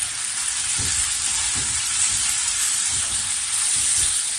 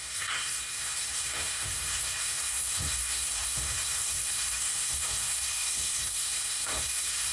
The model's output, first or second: second